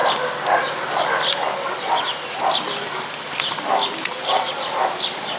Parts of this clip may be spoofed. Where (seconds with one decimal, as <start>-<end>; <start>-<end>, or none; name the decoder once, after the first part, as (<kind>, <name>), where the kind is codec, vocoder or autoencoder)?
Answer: 1.5-5.4 (vocoder, BigVGAN v2)